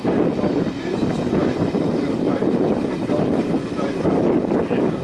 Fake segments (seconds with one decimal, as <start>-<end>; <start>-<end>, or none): none